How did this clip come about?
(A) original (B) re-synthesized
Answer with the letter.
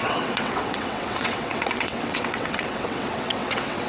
B